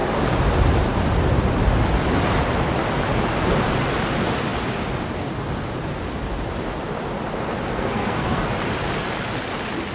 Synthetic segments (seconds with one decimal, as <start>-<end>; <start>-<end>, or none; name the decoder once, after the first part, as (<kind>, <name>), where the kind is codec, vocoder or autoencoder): 7.7-8.5 (codec, SNAC)